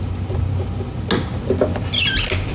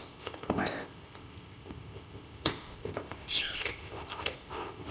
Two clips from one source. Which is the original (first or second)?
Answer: first